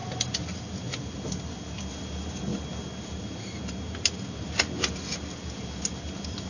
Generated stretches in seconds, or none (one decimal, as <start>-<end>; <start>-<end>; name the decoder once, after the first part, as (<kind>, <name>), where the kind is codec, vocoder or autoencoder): 0.0-1.4 (vocoder, BigVGAN v2)